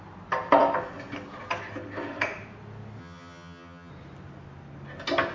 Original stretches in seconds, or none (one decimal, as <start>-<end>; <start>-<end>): 0.0-3.0; 3.9-5.3